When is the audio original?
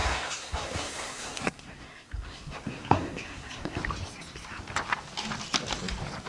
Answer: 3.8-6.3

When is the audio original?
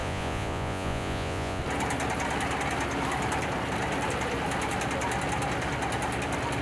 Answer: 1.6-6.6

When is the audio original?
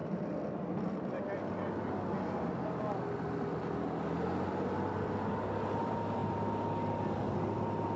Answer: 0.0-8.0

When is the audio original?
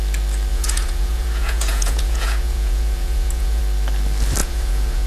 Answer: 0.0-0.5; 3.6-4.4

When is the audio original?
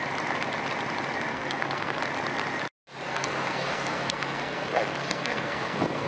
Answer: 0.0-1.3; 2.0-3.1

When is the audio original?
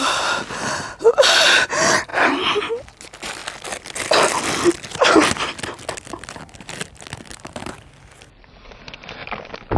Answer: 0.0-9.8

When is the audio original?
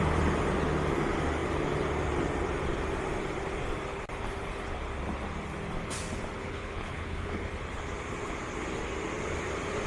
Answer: 0.0-6.4; 7.5-9.9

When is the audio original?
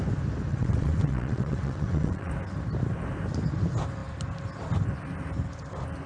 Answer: 0.0-0.5; 2.3-6.1